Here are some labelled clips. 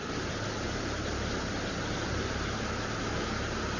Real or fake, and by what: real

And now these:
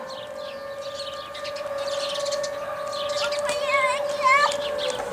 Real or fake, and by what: real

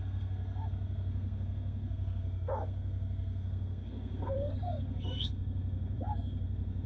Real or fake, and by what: fake, codec, SNAC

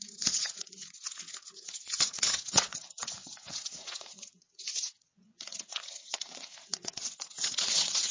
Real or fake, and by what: fake, vocoder, WaveNeXt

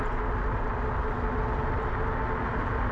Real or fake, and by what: real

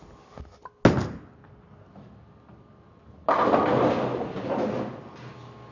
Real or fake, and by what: real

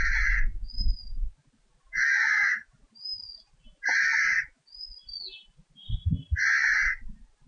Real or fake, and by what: real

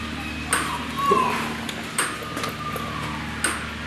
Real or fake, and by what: real